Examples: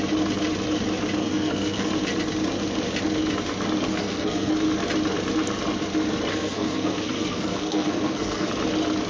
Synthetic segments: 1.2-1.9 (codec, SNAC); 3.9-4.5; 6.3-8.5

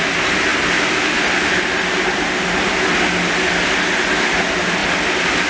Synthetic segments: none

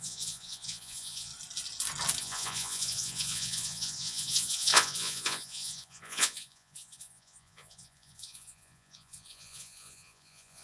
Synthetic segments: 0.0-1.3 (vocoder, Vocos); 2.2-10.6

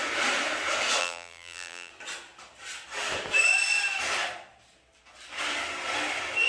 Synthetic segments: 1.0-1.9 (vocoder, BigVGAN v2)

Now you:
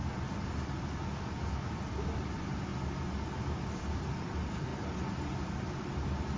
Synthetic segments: 0.8-2.7 (vocoder, BigVGAN v2); 3.7-4.7; 5.3-6.4